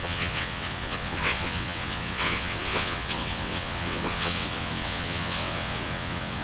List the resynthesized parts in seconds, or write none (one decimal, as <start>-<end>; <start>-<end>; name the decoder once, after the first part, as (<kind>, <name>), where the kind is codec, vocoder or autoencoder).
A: 0.0-6.4 (vocoder, WaveNeXt)